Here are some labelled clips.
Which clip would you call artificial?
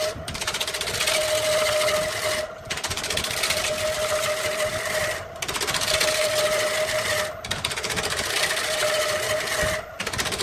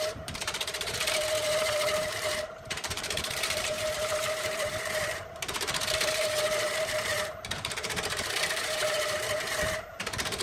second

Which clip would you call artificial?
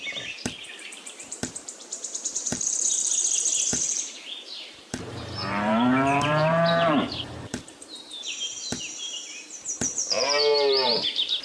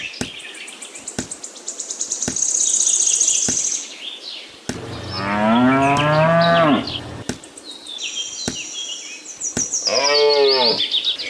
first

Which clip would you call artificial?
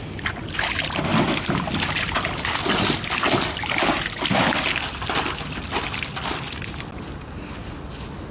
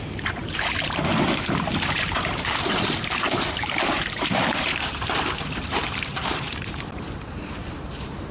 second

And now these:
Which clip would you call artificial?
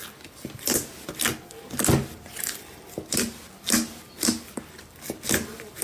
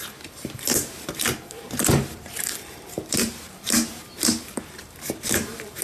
second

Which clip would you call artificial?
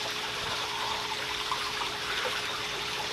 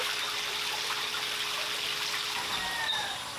first